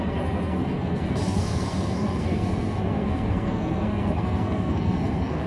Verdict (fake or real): fake